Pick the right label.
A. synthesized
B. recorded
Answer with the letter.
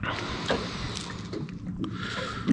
B